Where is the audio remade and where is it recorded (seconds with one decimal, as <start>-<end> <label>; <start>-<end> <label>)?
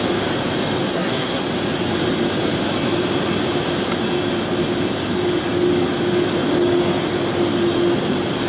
0.0-0.9 recorded; 0.9-1.4 remade; 1.4-8.5 recorded